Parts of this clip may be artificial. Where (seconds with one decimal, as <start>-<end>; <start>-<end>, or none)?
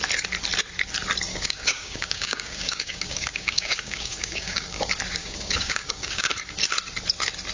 1.3-4.8; 5.2-6.3